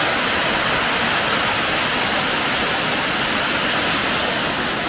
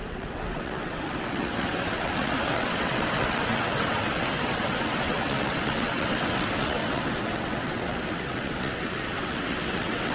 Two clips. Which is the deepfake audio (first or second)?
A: second